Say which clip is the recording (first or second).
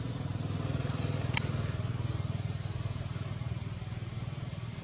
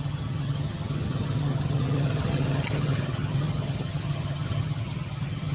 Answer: first